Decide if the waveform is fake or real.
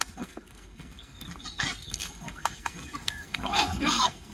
fake